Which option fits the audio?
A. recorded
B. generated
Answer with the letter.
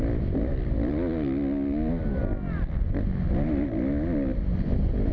A